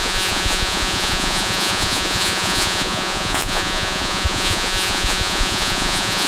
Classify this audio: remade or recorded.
remade